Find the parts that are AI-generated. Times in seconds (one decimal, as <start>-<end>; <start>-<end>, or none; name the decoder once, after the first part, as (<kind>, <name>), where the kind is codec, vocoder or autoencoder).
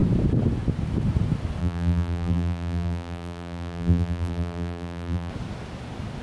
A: 1.6-5.3 (vocoder, BigVGAN v2)